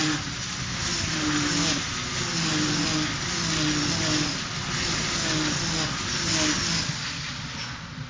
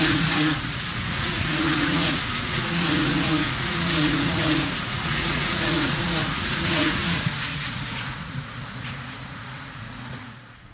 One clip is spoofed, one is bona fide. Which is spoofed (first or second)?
second